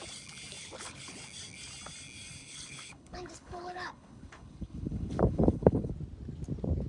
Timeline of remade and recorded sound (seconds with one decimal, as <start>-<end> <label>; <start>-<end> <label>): 0.0-0.6 recorded; 0.6-1.2 remade; 1.2-2.4 recorded; 2.4-5.9 remade; 5.9-6.9 recorded